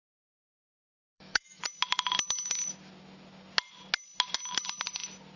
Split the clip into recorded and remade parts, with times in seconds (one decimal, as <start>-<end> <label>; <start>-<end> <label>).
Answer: 0.0-0.8 recorded; 0.8-1.6 remade; 1.6-5.4 recorded